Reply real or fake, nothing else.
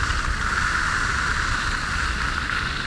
real